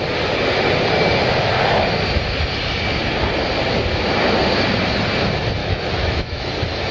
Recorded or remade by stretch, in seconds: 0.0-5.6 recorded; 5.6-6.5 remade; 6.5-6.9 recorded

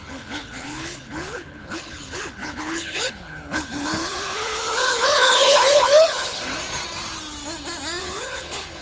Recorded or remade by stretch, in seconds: 0.0-6.5 remade; 6.5-8.0 recorded; 8.0-8.8 remade

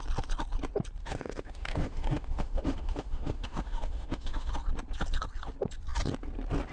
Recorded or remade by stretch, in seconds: 0.0-1.0 recorded; 1.0-4.5 remade; 4.5-6.7 recorded

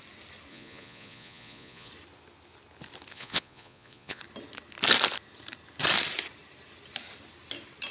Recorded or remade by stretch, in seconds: 0.0-0.5 recorded; 0.5-1.9 remade; 1.9-3.1 recorded; 3.1-4.2 remade; 4.2-7.9 recorded

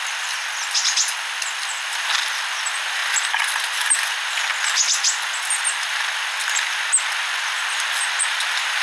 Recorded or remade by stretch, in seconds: 0.0-8.8 recorded